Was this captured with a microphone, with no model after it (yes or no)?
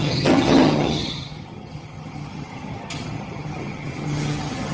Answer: no